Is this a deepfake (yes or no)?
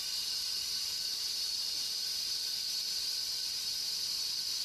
no